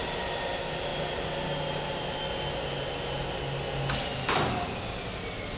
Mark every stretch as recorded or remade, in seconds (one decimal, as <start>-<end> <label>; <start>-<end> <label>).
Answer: 0.0-5.6 recorded